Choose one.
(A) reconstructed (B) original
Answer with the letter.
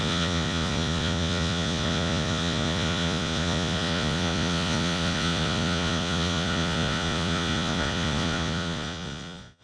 A